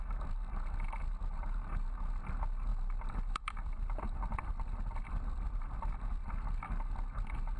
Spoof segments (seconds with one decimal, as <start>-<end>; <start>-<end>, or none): 2.7-6.3